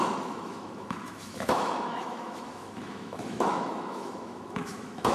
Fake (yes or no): yes